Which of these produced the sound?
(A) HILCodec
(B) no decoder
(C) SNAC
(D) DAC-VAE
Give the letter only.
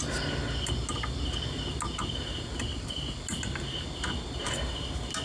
B